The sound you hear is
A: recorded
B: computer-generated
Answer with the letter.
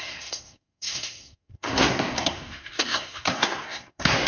B